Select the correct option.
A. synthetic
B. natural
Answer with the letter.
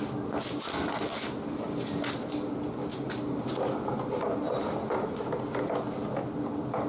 B